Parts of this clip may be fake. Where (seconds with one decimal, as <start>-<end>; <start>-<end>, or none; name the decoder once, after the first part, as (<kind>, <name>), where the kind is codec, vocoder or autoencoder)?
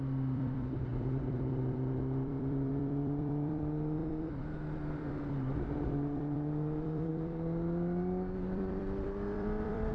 0.0-9.9 (vocoder, BigVGAN v2)